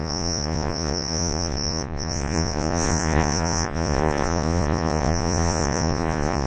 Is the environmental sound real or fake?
fake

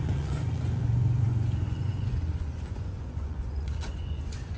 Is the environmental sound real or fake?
fake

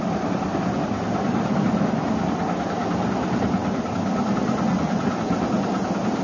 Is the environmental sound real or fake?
real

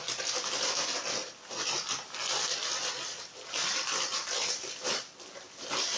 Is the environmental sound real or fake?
real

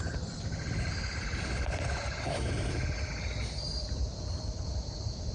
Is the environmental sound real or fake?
real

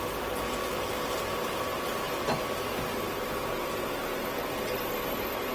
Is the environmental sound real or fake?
real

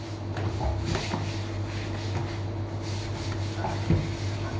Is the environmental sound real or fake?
real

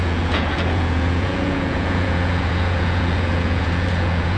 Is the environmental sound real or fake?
fake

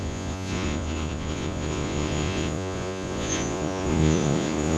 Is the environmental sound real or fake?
fake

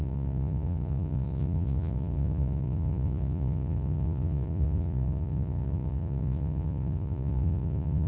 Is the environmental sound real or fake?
fake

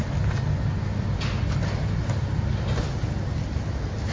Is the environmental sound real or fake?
real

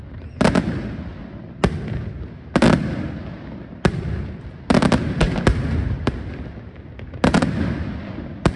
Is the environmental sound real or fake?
real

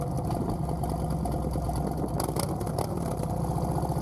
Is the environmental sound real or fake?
real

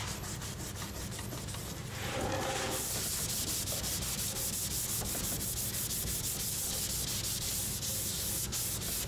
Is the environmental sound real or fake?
real